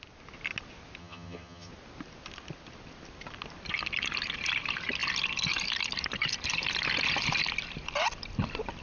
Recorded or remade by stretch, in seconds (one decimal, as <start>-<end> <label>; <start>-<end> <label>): 0.0-1.0 recorded; 1.0-1.7 remade; 1.7-8.8 recorded